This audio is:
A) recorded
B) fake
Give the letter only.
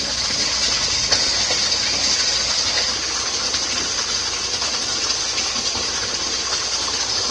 A